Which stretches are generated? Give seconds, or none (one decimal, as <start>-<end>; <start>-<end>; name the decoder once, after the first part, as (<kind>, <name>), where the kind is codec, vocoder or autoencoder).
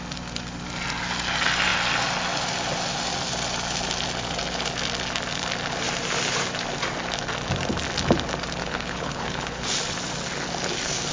8.6-9.7 (codec, HILCodec)